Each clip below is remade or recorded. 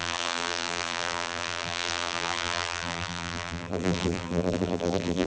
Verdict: remade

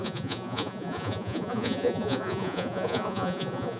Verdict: remade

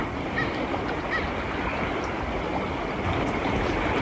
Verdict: recorded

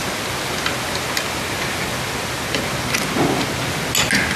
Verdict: recorded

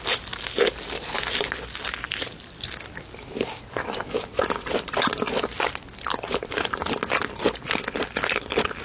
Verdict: recorded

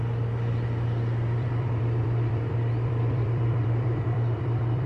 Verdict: remade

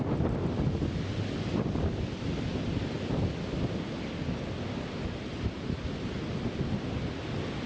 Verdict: recorded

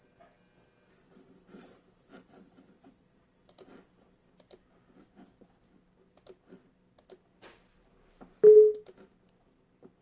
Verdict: recorded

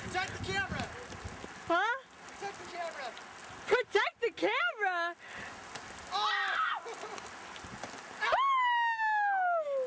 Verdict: recorded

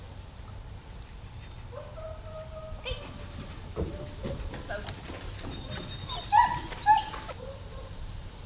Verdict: recorded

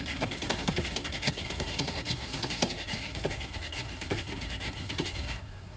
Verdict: remade